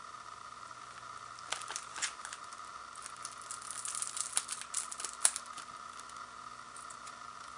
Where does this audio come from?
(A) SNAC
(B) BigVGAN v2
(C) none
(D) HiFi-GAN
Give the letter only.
C